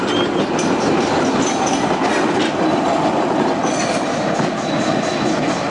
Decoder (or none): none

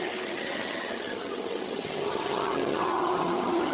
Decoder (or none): vocoder, HiFi-GAN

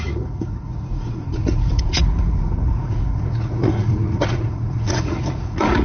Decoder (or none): vocoder, Vocos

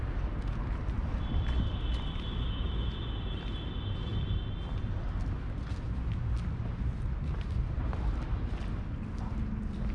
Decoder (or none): none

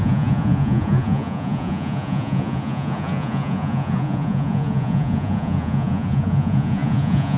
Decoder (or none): vocoder, Vocos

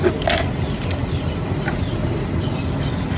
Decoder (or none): none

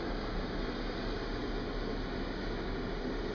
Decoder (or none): none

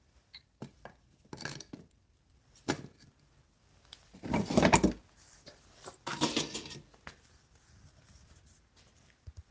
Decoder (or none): none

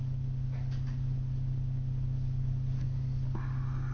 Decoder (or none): none